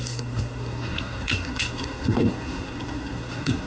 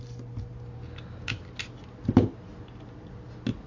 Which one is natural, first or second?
second